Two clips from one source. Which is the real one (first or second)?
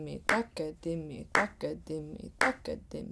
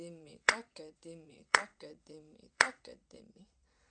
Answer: first